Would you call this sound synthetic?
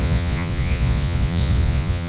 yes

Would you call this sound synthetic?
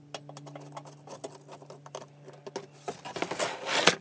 no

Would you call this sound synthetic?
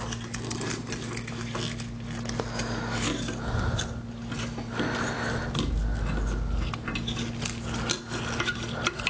no